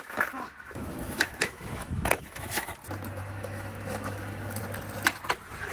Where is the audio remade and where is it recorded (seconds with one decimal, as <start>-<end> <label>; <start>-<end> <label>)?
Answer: 0.0-2.7 remade; 2.7-3.3 recorded; 3.3-4.6 remade; 4.6-5.7 recorded